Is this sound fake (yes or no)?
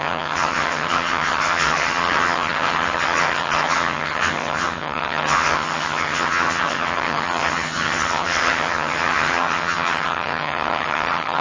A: yes